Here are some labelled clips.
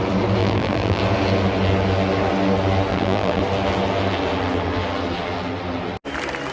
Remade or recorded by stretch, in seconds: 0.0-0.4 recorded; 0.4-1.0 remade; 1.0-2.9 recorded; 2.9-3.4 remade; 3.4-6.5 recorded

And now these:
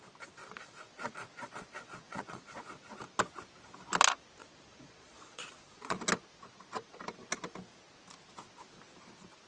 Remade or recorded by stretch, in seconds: 0.0-0.4 recorded; 0.4-2.8 remade; 2.8-4.4 recorded; 4.4-6.0 remade; 6.0-9.5 recorded

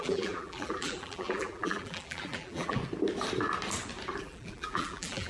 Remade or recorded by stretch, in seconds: 0.0-2.8 remade; 2.8-4.2 recorded; 4.2-5.3 remade

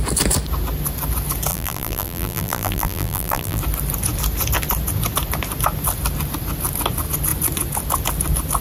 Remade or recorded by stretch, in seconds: 0.0-1.5 recorded; 1.5-3.6 remade; 3.6-8.6 recorded

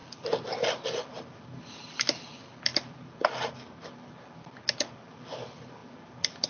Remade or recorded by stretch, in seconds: 0.0-6.5 recorded

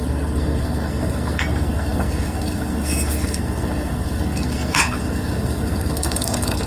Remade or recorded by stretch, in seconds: 0.0-6.7 remade

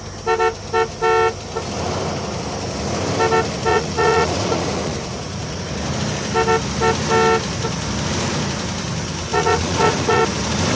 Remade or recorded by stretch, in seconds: 0.0-3.7 recorded; 3.7-5.6 remade; 5.6-9.3 recorded; 9.3-10.2 remade; 10.2-10.8 recorded